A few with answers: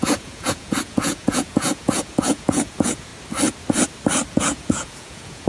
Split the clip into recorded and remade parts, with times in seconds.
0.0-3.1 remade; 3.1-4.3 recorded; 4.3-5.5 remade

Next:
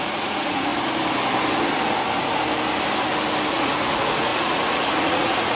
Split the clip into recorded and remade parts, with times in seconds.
0.0-0.7 remade; 0.7-3.5 recorded; 3.5-5.5 remade

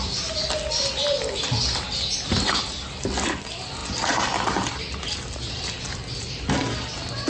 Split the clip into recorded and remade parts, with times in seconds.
0.0-7.3 recorded

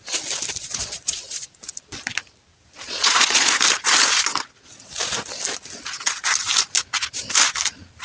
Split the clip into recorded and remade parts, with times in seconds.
0.0-0.6 recorded; 0.6-1.7 remade; 1.7-2.5 recorded; 2.5-3.6 remade; 3.6-8.0 recorded

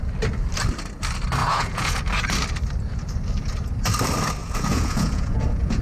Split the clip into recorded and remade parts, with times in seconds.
0.0-1.4 recorded; 1.4-2.0 remade; 2.0-4.4 recorded; 4.4-5.8 remade

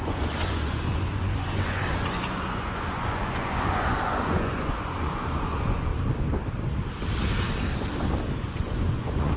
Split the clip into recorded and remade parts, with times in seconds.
0.0-5.9 remade; 5.9-8.4 recorded; 8.4-9.4 remade

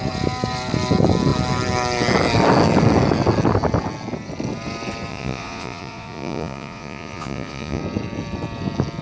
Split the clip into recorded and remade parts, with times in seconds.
0.0-5.1 recorded; 5.1-7.8 remade; 7.8-9.0 recorded